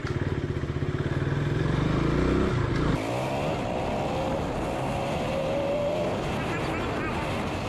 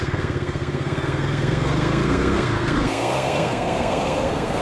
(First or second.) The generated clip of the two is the second